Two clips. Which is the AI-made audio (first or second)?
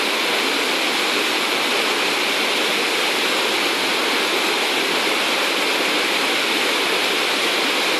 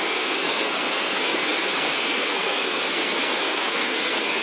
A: second